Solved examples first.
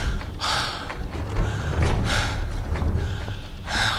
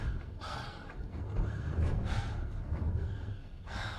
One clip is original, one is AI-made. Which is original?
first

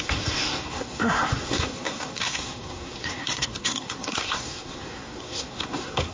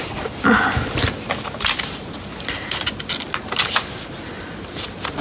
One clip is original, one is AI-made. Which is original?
second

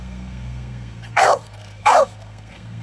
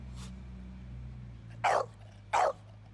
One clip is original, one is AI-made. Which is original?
second